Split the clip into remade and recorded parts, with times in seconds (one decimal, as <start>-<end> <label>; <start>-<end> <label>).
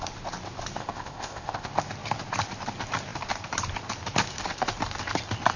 0.0-0.8 recorded; 0.8-1.7 remade; 1.7-5.6 recorded